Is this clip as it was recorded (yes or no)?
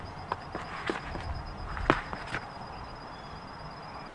yes